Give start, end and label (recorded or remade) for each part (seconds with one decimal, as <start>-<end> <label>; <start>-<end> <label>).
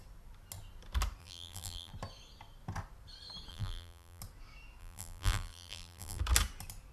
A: 0.0-1.2 recorded; 1.2-1.9 remade; 1.9-3.5 recorded; 3.5-4.2 remade; 4.2-4.8 recorded; 4.8-6.2 remade; 6.2-6.9 recorded